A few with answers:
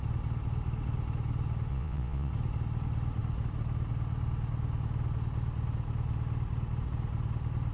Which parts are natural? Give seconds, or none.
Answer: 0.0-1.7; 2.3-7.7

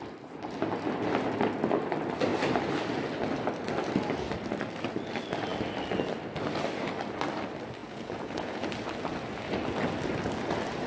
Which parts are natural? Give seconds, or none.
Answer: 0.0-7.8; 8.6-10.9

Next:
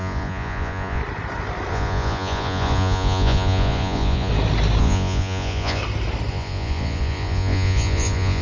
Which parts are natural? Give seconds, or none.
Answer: 1.0-1.7; 4.3-4.8; 5.8-6.3

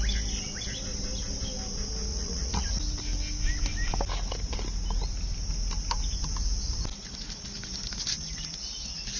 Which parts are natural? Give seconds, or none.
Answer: 0.0-2.1; 2.7-9.2

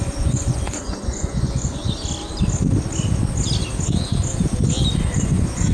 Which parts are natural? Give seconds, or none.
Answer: 1.8-5.2